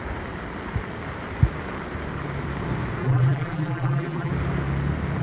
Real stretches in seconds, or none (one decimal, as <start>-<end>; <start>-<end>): 0.0-3.0; 4.3-5.2